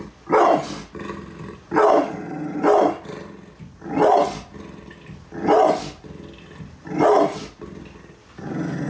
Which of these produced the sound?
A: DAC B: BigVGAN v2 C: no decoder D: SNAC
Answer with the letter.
C